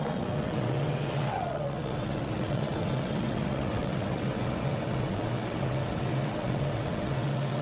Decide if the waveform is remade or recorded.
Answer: remade